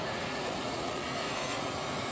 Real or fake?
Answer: fake